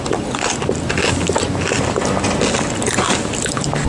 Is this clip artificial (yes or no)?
no